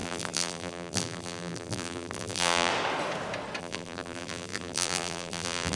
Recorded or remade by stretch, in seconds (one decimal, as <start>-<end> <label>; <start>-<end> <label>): 0.0-2.7 remade; 2.7-3.6 recorded; 3.6-5.8 remade